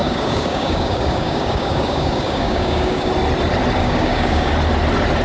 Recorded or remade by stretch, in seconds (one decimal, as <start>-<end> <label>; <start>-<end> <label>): 0.0-3.1 remade; 3.1-3.8 recorded; 3.8-4.5 remade; 4.5-5.2 recorded